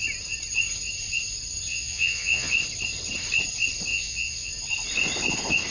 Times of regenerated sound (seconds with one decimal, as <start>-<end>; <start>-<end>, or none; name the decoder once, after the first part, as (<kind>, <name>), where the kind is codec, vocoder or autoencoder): 1.7-2.5 (vocoder, Vocos); 3.9-4.5